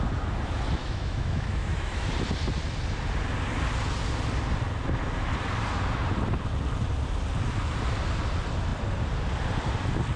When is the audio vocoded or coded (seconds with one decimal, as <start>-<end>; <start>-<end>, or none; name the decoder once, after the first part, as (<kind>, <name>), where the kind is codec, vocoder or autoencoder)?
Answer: 0.8-2.1 (autoencoder, DAC-VAE)

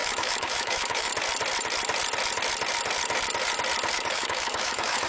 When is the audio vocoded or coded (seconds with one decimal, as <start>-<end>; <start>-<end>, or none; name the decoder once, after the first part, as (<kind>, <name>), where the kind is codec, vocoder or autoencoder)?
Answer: 0.0-1.1 (autoencoder, DAC-VAE); 3.9-5.1

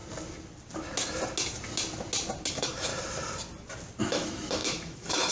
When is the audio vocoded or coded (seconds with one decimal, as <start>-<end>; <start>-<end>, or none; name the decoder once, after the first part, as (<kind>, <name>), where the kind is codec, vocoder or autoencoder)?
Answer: 2.5-2.9 (autoencoder, DAC-VAE); 4.0-5.3

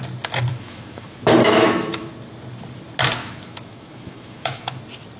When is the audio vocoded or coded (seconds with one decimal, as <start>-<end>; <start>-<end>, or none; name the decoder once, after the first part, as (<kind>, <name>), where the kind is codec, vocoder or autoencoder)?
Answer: 0.5-2.1 (autoencoder, DAC-VAE); 3.2-4.8

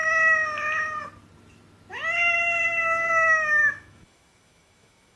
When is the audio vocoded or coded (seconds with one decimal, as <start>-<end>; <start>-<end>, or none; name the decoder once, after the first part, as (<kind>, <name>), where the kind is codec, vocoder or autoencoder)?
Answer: 3.1-5.2 (autoencoder, DAC-VAE)

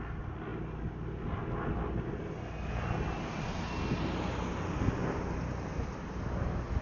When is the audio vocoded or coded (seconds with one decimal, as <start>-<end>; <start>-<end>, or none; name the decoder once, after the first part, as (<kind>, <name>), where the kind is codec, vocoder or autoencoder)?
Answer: none